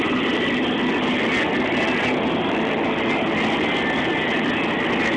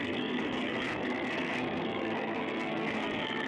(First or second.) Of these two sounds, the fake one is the second